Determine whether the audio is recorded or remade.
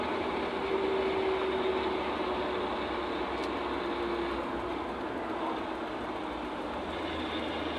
recorded